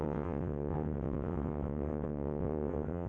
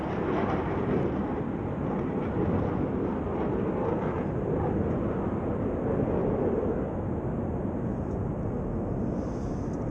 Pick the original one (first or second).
second